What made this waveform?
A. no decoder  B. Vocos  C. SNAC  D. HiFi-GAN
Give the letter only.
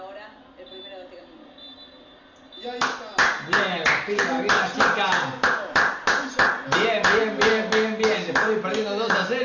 A